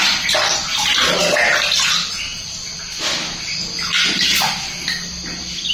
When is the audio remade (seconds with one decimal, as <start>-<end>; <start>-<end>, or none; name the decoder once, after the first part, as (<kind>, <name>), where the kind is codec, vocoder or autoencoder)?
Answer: none

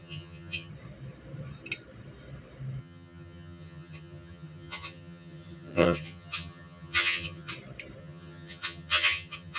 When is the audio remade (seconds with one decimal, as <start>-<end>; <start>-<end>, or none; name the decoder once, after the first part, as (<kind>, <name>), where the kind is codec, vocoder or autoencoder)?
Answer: 0.0-0.7 (vocoder, HiFi-GAN); 2.8-7.5; 8.0-9.6

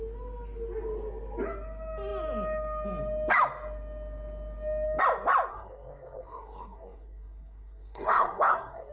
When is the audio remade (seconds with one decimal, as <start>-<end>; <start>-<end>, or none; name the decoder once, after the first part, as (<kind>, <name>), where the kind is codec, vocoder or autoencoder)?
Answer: 5.5-8.9 (codec, SNAC)

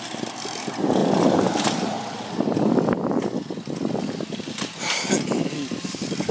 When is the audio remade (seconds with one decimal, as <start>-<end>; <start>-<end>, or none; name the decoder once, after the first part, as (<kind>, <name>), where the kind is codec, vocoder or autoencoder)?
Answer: 1.0-2.7 (vocoder, BigVGAN v2)

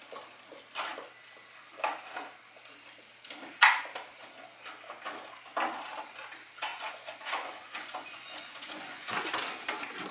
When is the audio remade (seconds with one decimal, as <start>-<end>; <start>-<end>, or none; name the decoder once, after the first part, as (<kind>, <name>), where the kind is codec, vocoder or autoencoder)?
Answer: 6.7-9.3 (vocoder, Vocos)

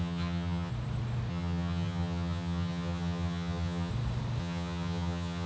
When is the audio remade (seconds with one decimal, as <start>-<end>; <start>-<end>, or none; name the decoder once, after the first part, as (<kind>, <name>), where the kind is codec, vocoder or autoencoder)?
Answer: 0.0-0.7 (vocoder, HiFi-GAN); 1.3-3.9; 4.4-5.5